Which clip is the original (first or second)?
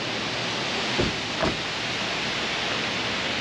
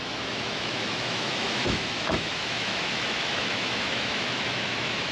first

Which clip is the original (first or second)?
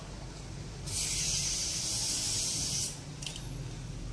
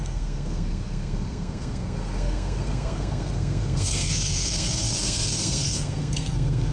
first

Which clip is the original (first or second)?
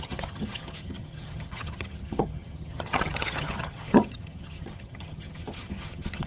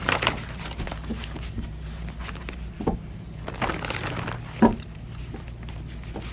second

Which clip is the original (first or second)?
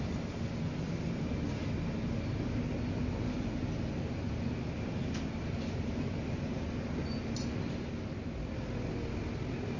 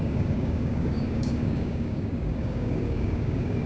first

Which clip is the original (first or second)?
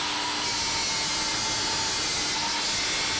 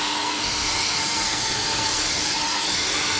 first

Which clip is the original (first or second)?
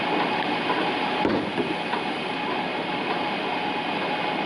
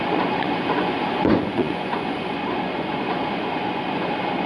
first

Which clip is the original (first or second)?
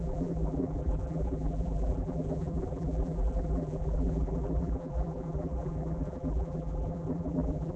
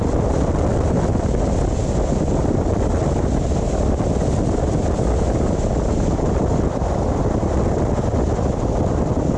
second